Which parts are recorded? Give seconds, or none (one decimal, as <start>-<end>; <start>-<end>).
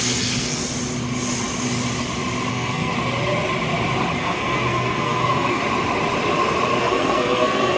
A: 0.6-2.5; 2.9-4.2; 5.6-6.8